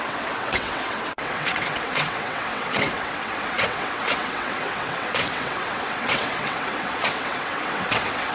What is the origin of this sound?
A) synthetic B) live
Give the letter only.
A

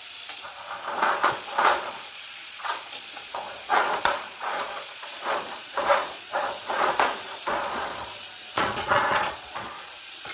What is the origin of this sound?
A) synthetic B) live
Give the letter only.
A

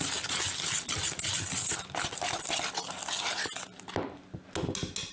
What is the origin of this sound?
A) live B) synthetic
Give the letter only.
A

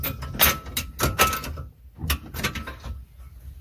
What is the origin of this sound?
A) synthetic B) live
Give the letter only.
B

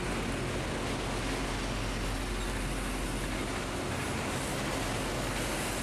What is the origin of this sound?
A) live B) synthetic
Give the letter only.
A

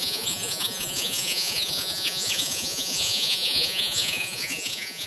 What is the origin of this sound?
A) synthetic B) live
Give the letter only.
A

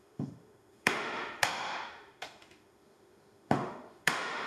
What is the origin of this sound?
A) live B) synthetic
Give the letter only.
B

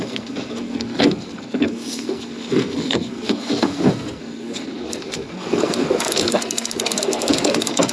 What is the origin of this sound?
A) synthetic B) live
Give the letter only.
A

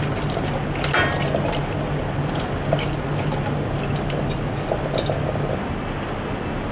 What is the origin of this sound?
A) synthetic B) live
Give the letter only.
B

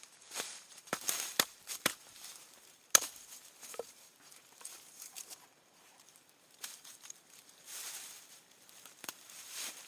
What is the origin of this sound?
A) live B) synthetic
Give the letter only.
B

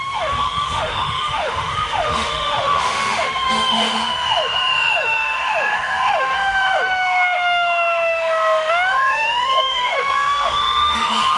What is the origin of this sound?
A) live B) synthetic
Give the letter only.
B